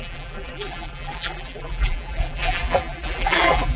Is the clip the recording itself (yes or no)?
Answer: no